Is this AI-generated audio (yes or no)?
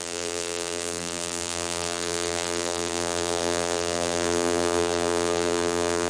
yes